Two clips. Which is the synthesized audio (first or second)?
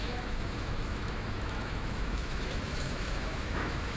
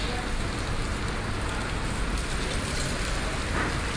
first